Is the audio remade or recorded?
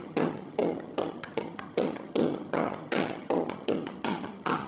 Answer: remade